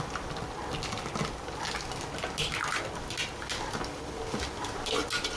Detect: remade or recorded recorded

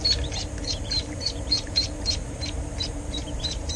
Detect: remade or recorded remade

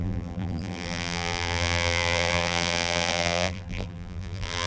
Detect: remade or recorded remade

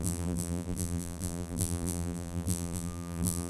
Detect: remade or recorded remade